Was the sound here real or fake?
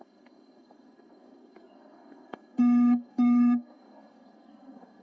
fake